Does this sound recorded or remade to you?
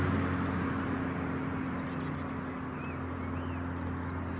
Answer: recorded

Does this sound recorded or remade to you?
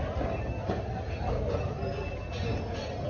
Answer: recorded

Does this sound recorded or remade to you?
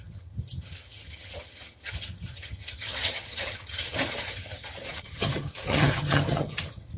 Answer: remade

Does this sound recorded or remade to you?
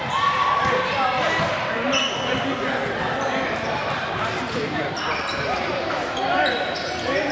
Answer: recorded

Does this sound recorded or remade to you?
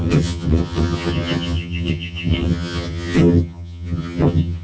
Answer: remade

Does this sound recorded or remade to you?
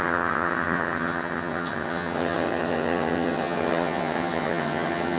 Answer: remade